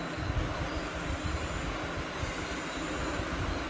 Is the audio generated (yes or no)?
no